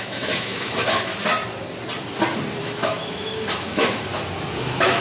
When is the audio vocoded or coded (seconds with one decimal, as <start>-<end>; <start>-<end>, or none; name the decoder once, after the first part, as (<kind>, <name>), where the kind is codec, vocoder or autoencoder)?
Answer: 0.0-1.1 (autoencoder, DAC-VAE); 2.6-4.1; 4.6-5.0